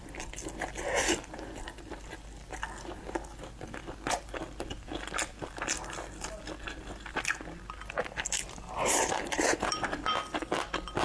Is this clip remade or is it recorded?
recorded